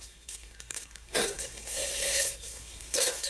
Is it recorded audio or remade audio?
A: remade